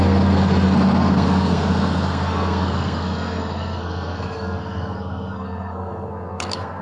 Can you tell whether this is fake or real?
fake